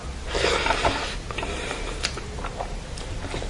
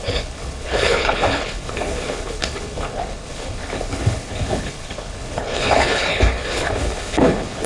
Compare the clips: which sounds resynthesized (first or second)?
second